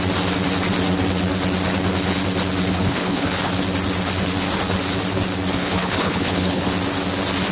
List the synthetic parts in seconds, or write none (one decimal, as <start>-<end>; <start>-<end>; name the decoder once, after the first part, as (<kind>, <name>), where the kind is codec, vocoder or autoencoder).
2.7-3.5 (codec, HILCodec); 5.6-6.7